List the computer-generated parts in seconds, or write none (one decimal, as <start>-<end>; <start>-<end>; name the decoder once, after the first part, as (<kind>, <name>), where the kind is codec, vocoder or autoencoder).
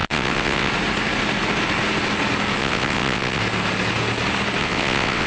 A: 0.0-0.7 (vocoder, WaveNeXt); 2.6-3.4; 4.6-5.3